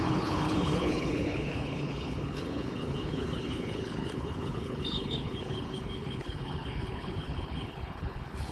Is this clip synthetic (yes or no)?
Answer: yes